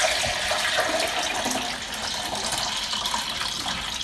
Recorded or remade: recorded